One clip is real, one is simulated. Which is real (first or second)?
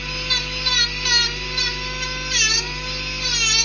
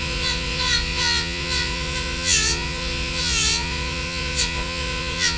first